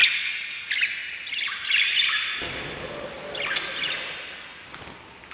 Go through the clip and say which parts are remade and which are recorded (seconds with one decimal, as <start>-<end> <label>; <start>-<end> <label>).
0.0-5.3 recorded